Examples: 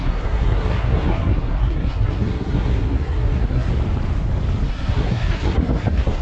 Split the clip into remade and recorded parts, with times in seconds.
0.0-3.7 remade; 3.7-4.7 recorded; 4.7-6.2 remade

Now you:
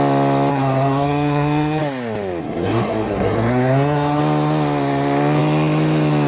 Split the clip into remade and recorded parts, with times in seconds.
0.0-0.5 recorded; 0.5-1.8 remade; 1.8-2.4 recorded; 2.4-4.2 remade; 4.2-6.3 recorded

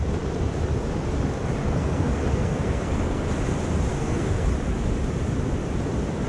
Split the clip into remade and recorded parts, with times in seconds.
0.0-1.6 recorded; 1.6-3.2 remade; 3.2-3.9 recorded; 3.9-4.5 remade; 4.5-6.3 recorded

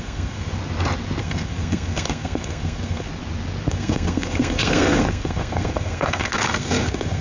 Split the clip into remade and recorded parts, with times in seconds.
0.0-0.6 remade; 0.6-1.2 recorded; 1.2-3.1 remade; 3.1-3.7 recorded; 3.7-7.2 remade

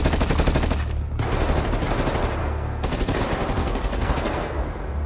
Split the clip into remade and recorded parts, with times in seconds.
0.0-2.4 recorded; 2.4-3.2 remade; 3.2-3.6 recorded; 3.6-4.6 remade; 4.6-5.1 recorded

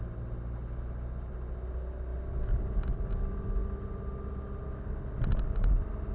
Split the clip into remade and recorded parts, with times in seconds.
0.0-6.1 recorded